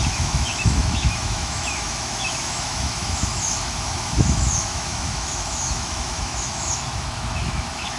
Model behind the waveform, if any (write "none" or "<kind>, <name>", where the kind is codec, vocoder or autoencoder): autoencoder, DAC-VAE